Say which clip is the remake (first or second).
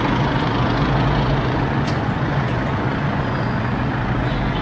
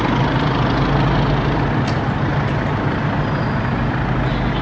first